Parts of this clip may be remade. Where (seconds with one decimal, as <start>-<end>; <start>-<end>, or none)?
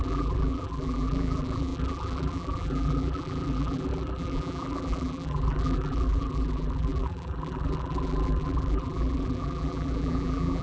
0.0-10.6